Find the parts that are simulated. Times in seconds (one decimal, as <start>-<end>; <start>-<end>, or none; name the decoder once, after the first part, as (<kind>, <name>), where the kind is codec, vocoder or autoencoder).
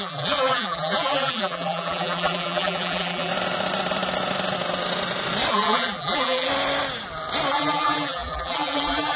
0.0-3.3 (vocoder, BigVGAN v2); 5.5-6.5; 7.5-9.2